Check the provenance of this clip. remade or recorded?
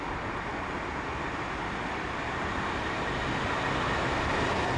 recorded